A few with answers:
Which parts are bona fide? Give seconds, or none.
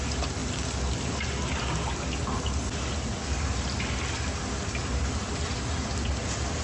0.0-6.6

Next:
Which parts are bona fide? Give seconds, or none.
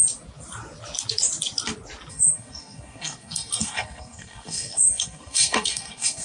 0.0-2.1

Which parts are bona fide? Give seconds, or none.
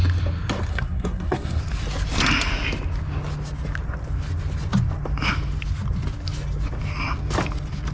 0.0-0.7; 1.6-7.9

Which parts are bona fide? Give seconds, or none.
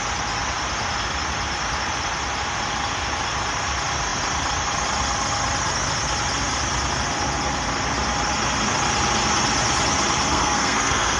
0.0-10.3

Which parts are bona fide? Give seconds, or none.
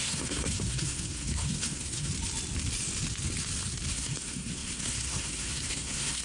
2.1-3.9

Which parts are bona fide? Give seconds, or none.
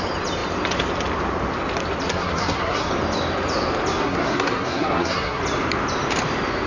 0.0-2.1; 2.9-4.0; 5.4-6.7